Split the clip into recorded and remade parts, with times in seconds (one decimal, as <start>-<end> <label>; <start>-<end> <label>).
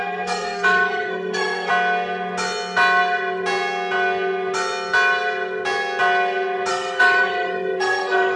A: 0.0-1.7 remade; 1.7-6.7 recorded; 6.7-8.4 remade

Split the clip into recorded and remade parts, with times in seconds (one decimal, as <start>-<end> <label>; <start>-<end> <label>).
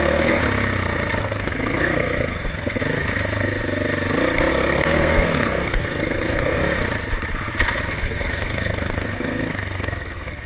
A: 0.0-0.4 remade; 0.4-1.2 recorded; 1.2-2.8 remade; 2.8-4.5 recorded; 4.5-6.6 remade; 6.6-7.9 recorded; 7.9-10.5 remade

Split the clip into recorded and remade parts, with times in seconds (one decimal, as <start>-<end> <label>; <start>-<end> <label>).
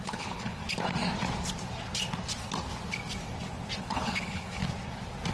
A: 0.0-0.6 remade; 0.6-3.8 recorded; 3.8-4.6 remade; 4.6-5.3 recorded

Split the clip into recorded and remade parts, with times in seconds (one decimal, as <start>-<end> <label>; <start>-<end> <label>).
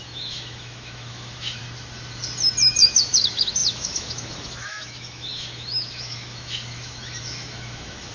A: 0.0-1.6 remade; 1.6-2.6 recorded; 2.6-8.1 remade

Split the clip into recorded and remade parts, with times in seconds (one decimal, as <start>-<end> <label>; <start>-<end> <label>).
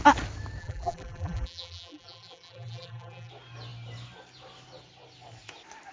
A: 0.0-0.6 recorded; 0.6-3.3 remade; 3.3-5.9 recorded